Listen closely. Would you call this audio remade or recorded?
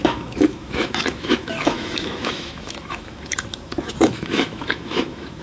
remade